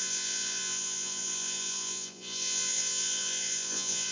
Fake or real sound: fake